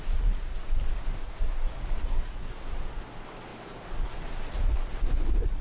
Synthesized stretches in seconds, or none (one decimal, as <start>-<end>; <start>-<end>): 2.0-2.5